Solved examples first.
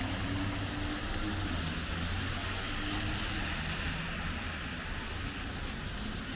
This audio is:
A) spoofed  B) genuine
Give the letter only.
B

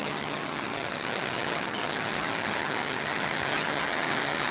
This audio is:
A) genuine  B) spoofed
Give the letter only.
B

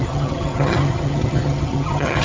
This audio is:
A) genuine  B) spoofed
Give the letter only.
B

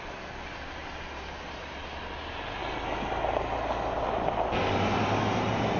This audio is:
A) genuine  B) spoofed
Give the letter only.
A